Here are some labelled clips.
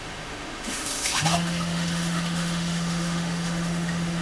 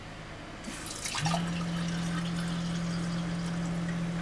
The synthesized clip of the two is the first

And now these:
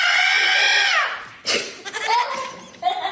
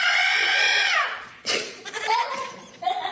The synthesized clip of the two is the second